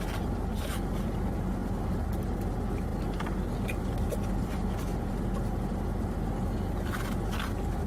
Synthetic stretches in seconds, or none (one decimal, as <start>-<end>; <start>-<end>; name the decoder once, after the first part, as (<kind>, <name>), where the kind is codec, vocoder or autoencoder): none